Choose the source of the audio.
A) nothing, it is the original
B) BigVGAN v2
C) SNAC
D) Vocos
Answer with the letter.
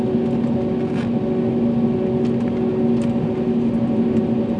A